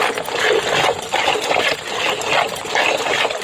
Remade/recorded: recorded